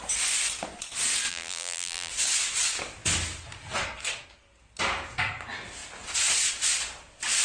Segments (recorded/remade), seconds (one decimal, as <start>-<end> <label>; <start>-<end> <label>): 0.0-1.3 recorded; 1.3-2.1 remade; 2.1-7.4 recorded